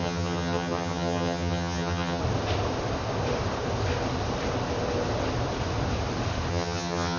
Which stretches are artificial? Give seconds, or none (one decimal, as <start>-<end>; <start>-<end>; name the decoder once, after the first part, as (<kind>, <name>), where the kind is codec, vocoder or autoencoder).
0.0-2.2 (vocoder, HiFi-GAN); 6.5-7.2

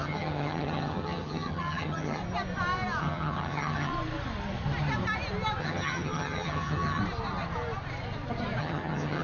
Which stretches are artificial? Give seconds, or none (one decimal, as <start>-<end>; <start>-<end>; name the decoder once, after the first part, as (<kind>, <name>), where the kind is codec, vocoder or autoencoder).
0.0-2.2 (vocoder, HiFi-GAN); 3.0-3.9; 5.6-7.0; 8.6-9.2

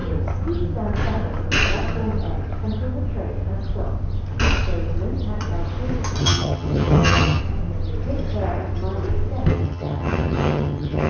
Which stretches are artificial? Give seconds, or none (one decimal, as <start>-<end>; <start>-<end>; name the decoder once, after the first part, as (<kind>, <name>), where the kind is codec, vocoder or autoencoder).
6.2-7.4 (vocoder, HiFi-GAN); 9.5-11.1

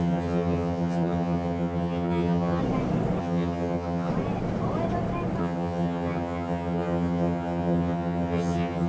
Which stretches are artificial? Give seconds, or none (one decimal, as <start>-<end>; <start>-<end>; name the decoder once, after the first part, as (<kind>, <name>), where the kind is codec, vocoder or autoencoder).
0.0-2.6 (vocoder, HiFi-GAN); 3.2-4.1; 5.4-8.9

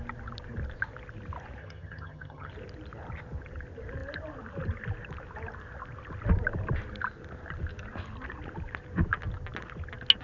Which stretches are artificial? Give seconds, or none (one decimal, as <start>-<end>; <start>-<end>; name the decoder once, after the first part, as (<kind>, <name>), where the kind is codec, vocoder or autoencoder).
1.6-2.5 (vocoder, HiFi-GAN)